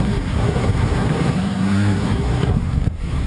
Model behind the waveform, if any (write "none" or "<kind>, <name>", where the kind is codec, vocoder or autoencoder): codec, SNAC